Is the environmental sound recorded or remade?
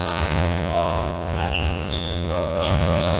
remade